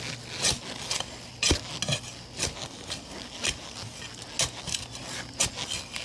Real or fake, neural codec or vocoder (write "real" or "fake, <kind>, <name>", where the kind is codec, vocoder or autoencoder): real